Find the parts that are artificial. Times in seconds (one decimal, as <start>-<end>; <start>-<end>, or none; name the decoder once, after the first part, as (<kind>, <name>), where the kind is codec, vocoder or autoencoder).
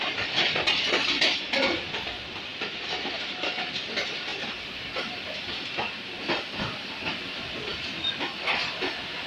2.5-3.2 (vocoder, BigVGAN v2)